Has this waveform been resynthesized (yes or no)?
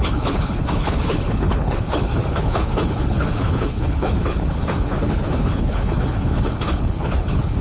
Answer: yes